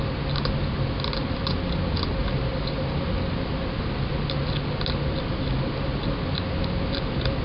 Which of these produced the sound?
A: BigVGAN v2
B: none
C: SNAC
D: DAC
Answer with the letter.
B